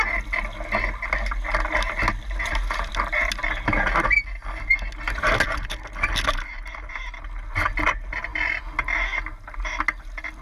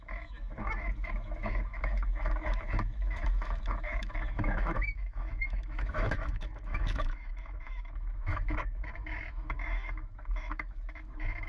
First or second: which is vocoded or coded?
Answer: second